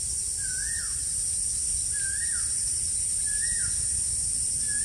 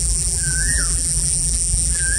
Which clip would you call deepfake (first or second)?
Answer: second